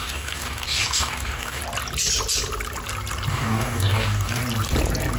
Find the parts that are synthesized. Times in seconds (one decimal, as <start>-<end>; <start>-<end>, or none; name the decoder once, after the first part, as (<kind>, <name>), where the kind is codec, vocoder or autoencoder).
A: 0.0-1.6 (codec, DAC); 3.3-4.4